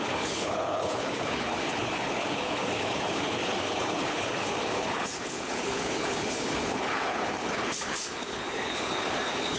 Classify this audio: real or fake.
fake